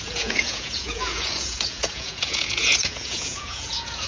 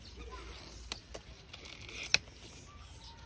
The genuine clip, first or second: second